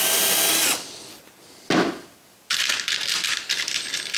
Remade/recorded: recorded